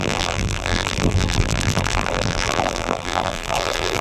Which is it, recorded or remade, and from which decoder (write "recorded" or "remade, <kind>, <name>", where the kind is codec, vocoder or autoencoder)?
remade, vocoder, BigVGAN v2